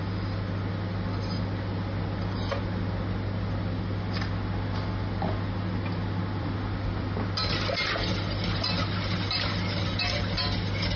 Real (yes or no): yes